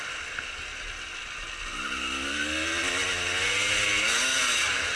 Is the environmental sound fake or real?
real